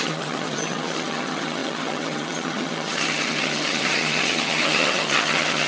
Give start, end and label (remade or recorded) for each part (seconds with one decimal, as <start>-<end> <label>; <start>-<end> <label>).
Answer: 0.0-5.7 remade